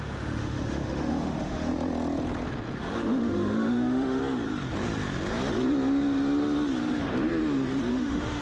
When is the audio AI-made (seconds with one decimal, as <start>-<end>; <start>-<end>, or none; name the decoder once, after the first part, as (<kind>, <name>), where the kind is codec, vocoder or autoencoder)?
0.0-1.7 (autoencoder, DAC-VAE); 2.8-4.2; 7.9-8.4